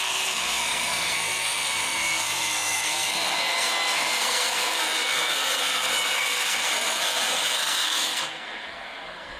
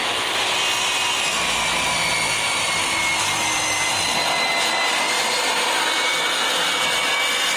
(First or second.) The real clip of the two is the second